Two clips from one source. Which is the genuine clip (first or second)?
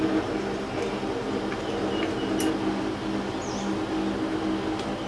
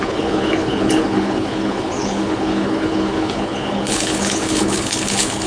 first